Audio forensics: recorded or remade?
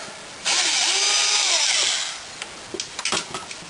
recorded